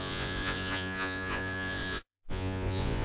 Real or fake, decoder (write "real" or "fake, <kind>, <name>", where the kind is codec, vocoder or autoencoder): fake, vocoder, Vocos